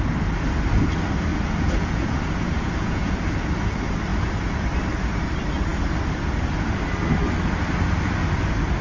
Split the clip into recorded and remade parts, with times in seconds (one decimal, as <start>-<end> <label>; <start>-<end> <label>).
0.0-1.3 recorded; 1.3-3.2 remade; 3.2-8.8 recorded